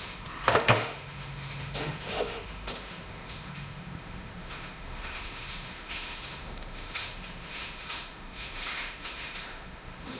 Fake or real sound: fake